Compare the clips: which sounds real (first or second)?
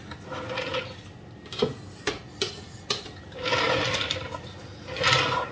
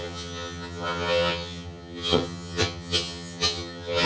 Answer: first